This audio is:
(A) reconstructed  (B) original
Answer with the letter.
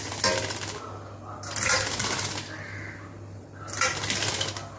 B